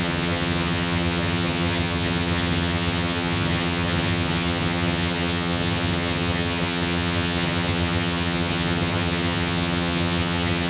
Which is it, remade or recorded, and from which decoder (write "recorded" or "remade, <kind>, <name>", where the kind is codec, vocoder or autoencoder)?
remade, vocoder, HiFi-GAN